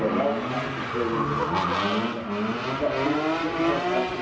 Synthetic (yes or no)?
no